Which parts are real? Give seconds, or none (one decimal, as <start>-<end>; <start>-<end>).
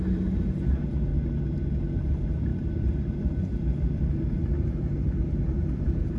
1.1-1.8